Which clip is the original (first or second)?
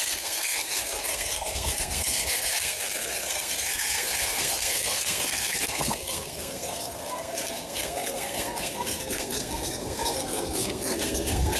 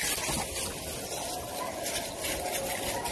second